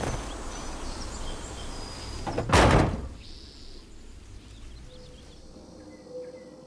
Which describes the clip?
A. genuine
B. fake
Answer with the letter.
A